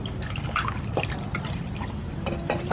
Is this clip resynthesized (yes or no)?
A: no